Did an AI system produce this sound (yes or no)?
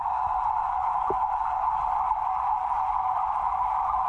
no